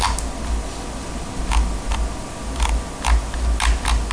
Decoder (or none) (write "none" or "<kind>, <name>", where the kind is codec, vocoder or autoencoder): none